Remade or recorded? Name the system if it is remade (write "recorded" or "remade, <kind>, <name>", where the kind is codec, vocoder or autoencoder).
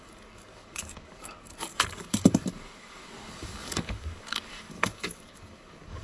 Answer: remade, codec, DAC